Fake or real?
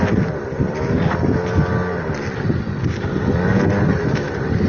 real